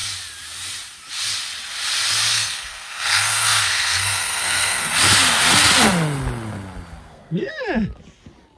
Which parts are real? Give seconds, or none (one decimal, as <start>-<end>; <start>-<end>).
0.0-2.3; 4.9-7.0; 7.5-8.6